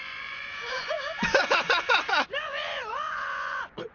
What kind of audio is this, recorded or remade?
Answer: remade